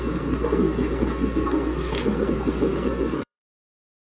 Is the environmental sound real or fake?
fake